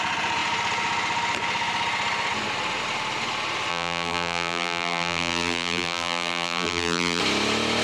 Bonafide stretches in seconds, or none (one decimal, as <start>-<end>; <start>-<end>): 0.0-3.7; 7.2-7.8